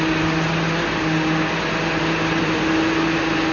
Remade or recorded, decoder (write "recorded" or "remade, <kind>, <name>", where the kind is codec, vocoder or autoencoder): recorded